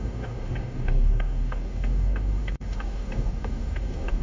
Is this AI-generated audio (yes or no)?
yes